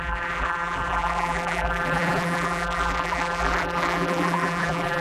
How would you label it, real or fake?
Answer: fake